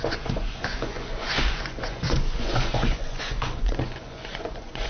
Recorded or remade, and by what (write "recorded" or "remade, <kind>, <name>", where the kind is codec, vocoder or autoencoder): remade, vocoder, Vocos